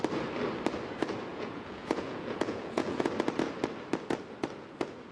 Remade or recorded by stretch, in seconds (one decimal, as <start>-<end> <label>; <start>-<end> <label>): 0.0-1.3 recorded; 1.3-3.1 remade; 3.1-5.1 recorded